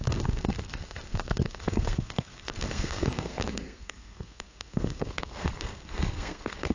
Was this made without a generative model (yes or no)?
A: no